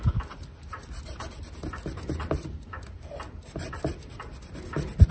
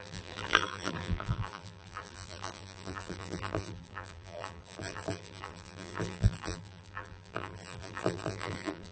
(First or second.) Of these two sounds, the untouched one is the first